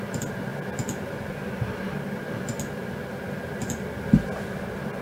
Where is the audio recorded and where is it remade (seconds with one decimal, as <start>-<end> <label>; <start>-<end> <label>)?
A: 0.0-5.0 recorded